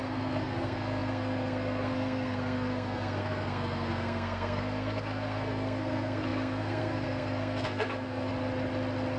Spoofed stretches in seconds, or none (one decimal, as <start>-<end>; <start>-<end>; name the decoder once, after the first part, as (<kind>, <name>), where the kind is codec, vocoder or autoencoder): 0.0-8.3 (codec, SNAC)